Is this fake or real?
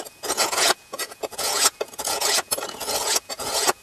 fake